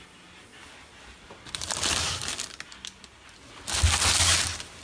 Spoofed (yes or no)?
no